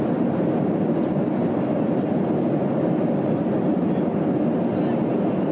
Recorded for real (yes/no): yes